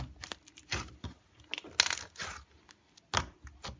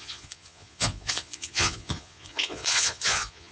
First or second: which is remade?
second